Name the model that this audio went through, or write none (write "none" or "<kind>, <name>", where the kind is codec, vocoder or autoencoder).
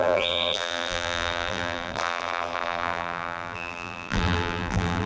vocoder, BigVGAN v2